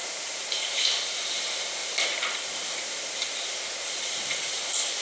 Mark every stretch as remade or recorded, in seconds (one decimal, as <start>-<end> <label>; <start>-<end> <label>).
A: 0.0-0.8 remade; 0.8-1.8 recorded; 1.8-4.6 remade; 4.6-5.0 recorded